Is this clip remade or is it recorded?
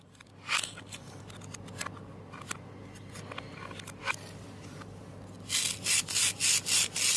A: recorded